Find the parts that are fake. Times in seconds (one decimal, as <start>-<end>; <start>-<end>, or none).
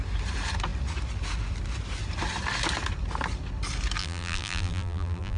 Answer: 4.0-5.4